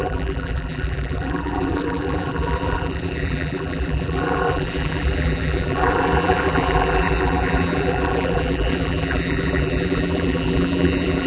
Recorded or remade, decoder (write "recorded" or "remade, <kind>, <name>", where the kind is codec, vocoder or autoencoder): remade, vocoder, BigVGAN v2